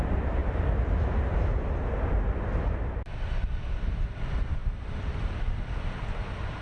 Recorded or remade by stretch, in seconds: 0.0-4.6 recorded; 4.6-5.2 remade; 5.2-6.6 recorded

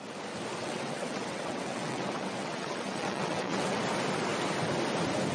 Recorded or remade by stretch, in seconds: 0.0-0.6 recorded; 0.6-3.8 remade; 3.8-5.3 recorded

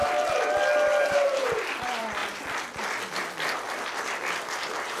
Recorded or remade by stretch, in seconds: 0.0-1.0 recorded; 1.0-2.2 remade; 2.2-4.4 recorded; 4.4-5.0 remade

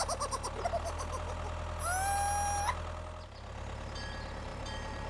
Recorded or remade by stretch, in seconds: 0.0-4.5 recorded; 4.5-5.1 remade

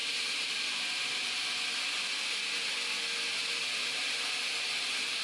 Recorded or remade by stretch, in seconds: 0.0-1.4 remade; 1.4-3.4 recorded; 3.4-5.2 remade